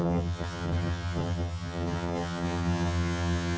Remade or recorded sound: remade